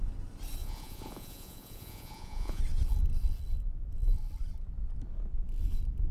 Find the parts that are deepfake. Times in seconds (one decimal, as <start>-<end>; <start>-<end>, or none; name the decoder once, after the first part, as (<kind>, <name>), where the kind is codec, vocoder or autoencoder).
0.6-2.6 (vocoder, Vocos)